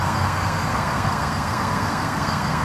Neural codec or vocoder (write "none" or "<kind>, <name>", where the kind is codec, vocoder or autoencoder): codec, SNAC